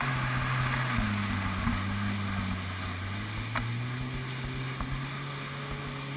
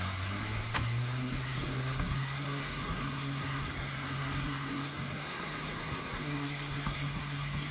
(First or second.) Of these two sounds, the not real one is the second